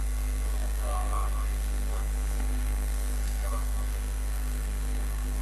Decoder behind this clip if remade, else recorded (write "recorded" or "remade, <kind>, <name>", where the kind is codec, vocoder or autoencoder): remade, codec, SNAC